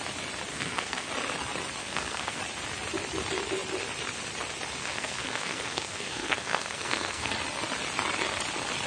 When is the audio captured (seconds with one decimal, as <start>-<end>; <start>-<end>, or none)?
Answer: 0.0-0.5; 1.1-1.8; 2.4-4.8; 7.3-8.9